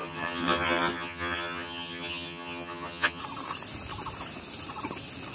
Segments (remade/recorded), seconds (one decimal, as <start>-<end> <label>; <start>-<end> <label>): 0.0-3.2 remade; 3.2-5.3 recorded